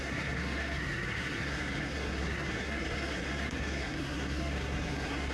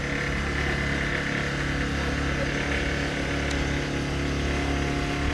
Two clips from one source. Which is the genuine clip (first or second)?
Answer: second